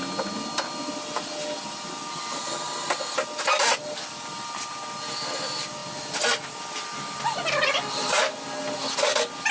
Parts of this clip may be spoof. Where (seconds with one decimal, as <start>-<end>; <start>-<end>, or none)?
none